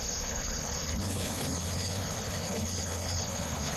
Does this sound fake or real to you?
fake